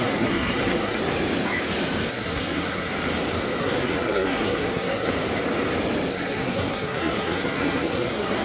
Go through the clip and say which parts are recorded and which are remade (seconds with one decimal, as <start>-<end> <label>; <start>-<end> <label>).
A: 0.0-1.0 remade; 1.0-2.1 recorded; 2.1-2.9 remade; 2.9-3.6 recorded; 3.6-5.1 remade; 5.1-6.1 recorded; 6.1-8.4 remade